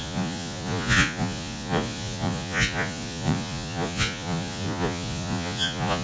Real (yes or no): no